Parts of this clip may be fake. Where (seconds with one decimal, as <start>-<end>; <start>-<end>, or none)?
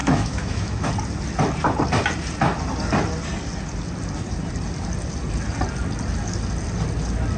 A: 0.0-0.9